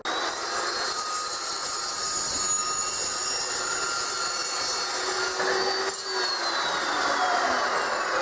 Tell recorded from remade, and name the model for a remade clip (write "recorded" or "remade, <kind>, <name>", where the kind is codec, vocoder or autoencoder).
recorded